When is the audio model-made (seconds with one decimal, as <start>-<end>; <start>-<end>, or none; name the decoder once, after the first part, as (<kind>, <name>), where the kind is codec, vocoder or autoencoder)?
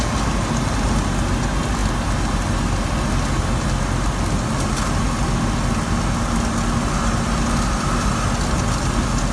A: none